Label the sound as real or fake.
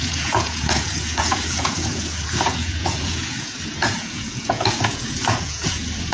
fake